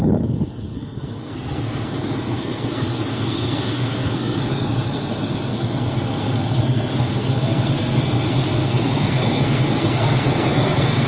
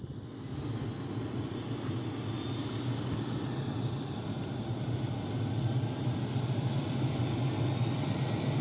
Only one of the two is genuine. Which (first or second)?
second